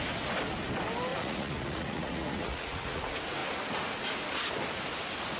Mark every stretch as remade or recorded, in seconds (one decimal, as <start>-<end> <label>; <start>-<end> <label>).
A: 0.0-1.1 recorded; 1.1-3.0 remade; 3.0-5.4 recorded